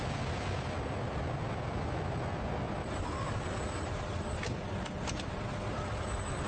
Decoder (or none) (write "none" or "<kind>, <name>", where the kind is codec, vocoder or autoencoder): none